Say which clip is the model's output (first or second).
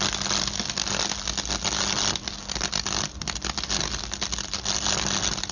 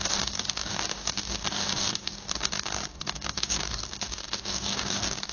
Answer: second